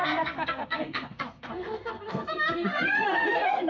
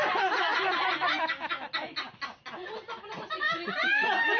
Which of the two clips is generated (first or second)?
first